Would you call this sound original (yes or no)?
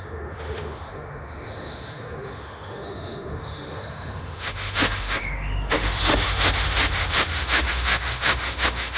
no